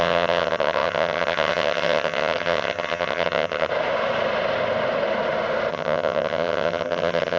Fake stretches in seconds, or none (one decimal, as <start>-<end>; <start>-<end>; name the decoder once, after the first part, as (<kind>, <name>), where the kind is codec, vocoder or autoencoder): 0.0-3.7 (vocoder, HiFi-GAN); 5.7-7.4